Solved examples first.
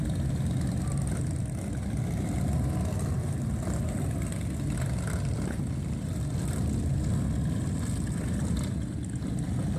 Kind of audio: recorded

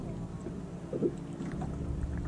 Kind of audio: recorded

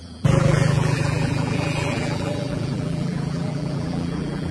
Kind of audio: remade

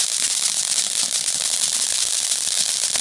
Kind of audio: recorded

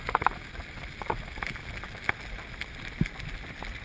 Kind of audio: recorded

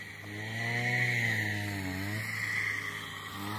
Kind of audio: recorded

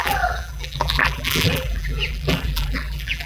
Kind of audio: remade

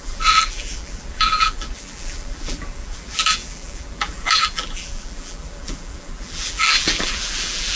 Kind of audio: remade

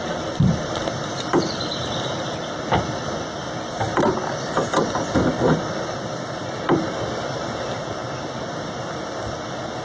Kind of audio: recorded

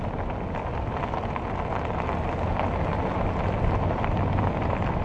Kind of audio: recorded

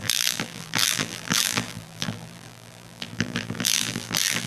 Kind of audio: remade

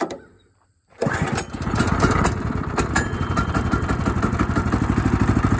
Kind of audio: remade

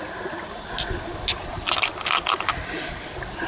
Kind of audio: recorded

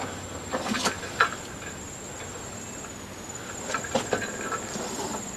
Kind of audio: recorded